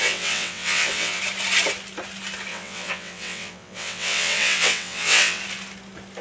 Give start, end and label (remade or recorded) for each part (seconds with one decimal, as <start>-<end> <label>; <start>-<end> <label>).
0.0-1.2 remade; 1.2-2.5 recorded; 2.5-5.4 remade; 5.4-6.2 recorded

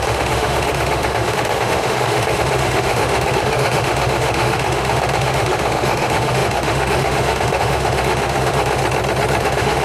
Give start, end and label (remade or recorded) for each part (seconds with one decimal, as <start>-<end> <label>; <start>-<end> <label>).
0.0-8.8 remade; 8.8-9.4 recorded; 9.4-9.8 remade

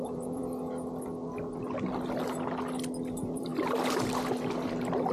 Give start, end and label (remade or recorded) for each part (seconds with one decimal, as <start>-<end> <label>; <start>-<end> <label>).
0.0-0.4 remade; 0.4-3.1 recorded; 3.1-3.5 remade; 3.5-4.3 recorded; 4.3-5.1 remade

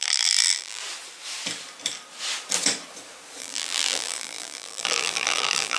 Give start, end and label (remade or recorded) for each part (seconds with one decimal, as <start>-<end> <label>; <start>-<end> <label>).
0.0-0.8 remade; 0.8-3.4 recorded; 3.4-5.8 remade

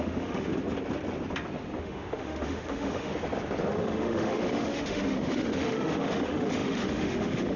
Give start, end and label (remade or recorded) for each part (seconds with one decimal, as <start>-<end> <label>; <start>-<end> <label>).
0.0-0.5 remade; 0.5-1.8 recorded; 1.8-3.1 remade; 3.1-3.7 recorded; 3.7-7.6 remade

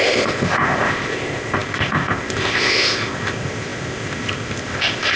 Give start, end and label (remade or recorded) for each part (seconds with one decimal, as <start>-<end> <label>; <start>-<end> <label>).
0.0-5.2 remade

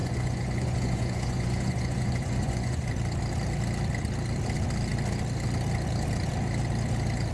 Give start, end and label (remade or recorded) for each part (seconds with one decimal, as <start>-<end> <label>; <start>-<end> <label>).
0.0-2.9 remade; 2.9-7.3 recorded

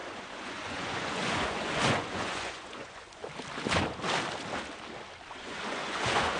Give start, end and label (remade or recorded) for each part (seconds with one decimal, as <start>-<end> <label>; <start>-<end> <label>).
0.0-3.2 remade; 3.2-5.3 recorded; 5.3-6.4 remade